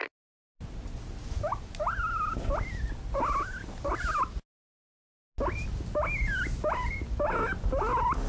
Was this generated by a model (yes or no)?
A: no